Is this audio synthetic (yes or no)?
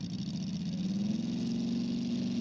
no